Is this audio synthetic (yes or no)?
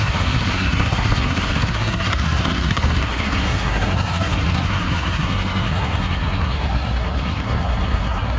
yes